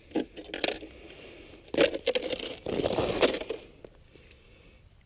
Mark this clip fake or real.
real